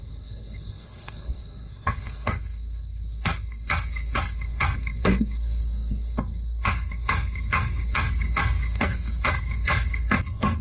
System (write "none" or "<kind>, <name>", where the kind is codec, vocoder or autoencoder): codec, SNAC